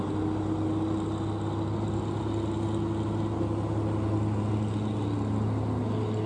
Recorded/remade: recorded